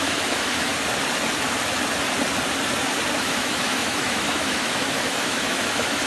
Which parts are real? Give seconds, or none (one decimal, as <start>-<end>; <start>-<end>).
0.7-3.2